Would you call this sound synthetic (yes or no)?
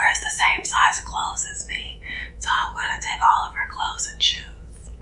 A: yes